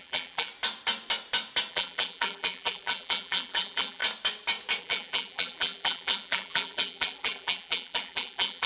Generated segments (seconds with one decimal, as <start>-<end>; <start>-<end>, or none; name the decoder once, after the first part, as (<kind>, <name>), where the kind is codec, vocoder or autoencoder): 0.0-0.5 (vocoder, BigVGAN v2); 1.7-4.0; 4.8-8.7